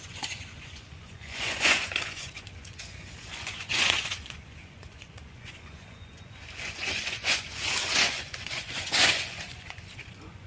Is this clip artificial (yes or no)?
yes